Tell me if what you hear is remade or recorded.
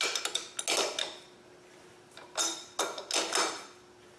recorded